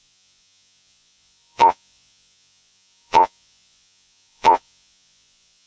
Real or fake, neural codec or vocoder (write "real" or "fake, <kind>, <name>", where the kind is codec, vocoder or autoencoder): fake, vocoder, Vocos